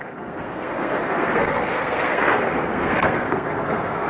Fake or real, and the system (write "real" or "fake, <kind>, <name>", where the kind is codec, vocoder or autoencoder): fake, codec, SNAC